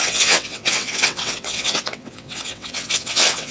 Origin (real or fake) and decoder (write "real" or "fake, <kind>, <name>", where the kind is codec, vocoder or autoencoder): fake, vocoder, WaveNeXt